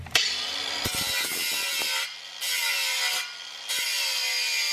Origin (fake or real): real